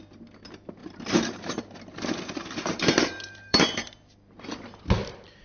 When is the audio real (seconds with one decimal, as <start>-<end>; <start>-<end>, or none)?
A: 0.0-0.8; 3.9-5.4